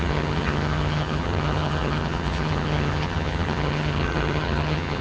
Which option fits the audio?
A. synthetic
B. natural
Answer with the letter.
A